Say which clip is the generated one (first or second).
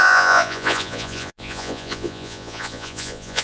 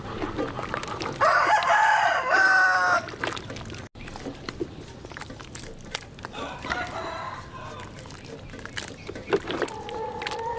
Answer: first